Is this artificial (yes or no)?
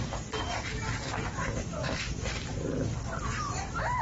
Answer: no